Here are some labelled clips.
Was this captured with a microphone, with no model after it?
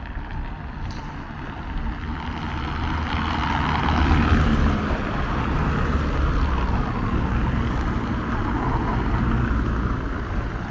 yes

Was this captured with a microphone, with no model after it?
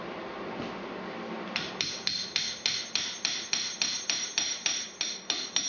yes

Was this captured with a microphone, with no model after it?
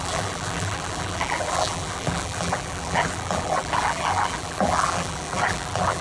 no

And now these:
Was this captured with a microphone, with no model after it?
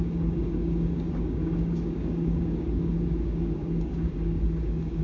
no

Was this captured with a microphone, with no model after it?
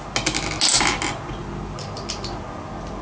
yes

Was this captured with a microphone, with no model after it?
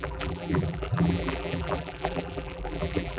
no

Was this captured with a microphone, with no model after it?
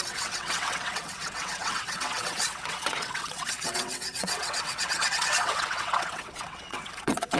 no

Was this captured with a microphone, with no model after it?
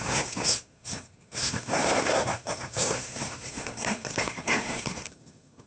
no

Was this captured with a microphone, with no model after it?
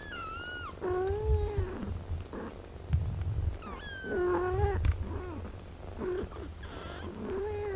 yes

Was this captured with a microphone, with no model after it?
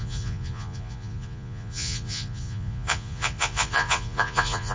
no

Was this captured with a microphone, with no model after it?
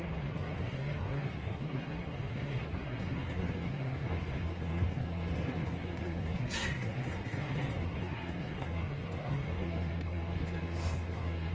no